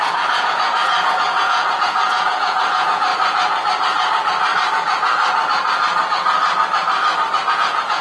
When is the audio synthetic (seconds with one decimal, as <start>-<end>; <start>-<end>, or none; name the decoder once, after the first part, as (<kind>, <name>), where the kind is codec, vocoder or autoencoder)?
0.0-3.1 (vocoder, Vocos); 7.5-8.0